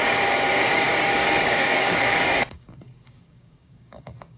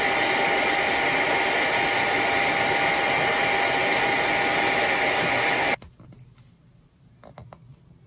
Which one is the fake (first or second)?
first